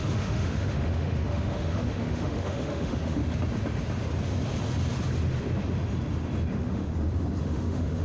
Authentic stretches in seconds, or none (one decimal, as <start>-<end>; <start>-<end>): 3.2-6.5; 6.9-7.4